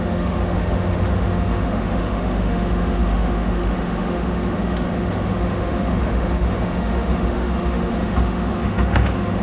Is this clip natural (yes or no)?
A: no